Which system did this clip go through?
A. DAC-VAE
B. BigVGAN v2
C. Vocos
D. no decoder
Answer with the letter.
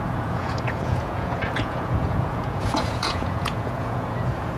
C